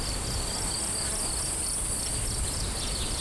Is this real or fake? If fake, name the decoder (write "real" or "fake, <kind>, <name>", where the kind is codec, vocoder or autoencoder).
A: real